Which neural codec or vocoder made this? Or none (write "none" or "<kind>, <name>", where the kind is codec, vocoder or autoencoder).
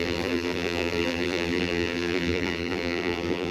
vocoder, BigVGAN v2